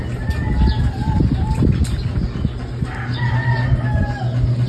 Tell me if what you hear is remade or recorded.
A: recorded